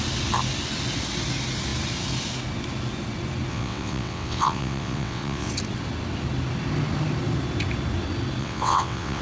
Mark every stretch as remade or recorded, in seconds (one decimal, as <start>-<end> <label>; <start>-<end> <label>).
0.0-3.5 recorded; 3.5-5.5 remade; 5.5-8.4 recorded; 8.4-9.2 remade

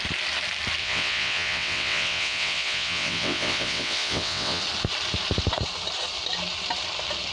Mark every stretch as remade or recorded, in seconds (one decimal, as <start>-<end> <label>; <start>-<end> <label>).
0.0-0.8 recorded; 0.8-4.6 remade; 4.6-7.3 recorded

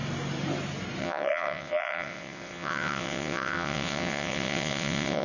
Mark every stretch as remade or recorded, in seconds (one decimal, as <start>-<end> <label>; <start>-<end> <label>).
0.0-1.0 recorded; 1.0-5.2 remade

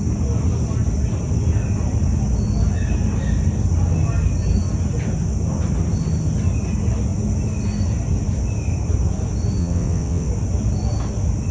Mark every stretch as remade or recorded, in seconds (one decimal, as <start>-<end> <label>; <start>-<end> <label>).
0.0-9.6 recorded; 9.6-10.3 remade; 10.3-11.5 recorded

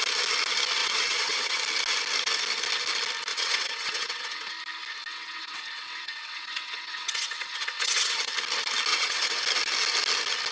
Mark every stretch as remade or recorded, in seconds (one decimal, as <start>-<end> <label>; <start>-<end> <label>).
0.0-0.8 recorded; 0.8-1.6 remade; 1.6-3.3 recorded; 3.3-4.5 remade; 4.5-5.1 recorded; 5.1-8.3 remade; 8.3-8.9 recorded; 8.9-9.4 remade; 9.4-10.5 recorded

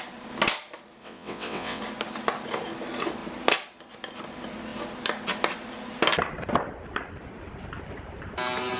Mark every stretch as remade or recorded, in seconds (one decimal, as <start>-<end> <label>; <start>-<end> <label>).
0.0-1.0 recorded; 1.0-1.8 remade; 1.8-8.8 recorded